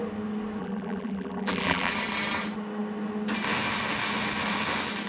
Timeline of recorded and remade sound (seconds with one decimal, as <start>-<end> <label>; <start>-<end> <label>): 0.0-0.6 recorded; 0.6-1.9 remade; 1.9-5.1 recorded